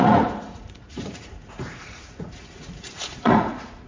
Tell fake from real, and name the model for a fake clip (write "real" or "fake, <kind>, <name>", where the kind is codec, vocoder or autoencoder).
fake, vocoder, Vocos